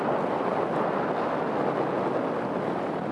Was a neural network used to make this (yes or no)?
no